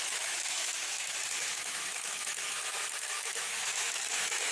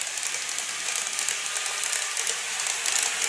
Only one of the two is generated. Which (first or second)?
first